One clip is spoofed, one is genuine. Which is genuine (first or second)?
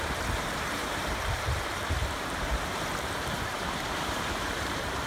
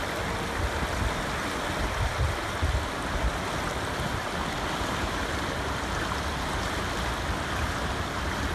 second